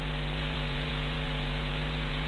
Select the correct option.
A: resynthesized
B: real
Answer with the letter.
A